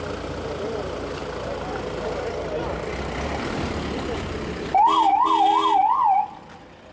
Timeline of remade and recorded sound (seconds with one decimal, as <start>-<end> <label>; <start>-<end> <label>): 0.0-6.9 recorded